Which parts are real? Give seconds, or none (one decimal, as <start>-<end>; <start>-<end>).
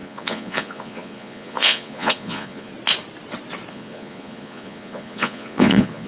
2.7-3.7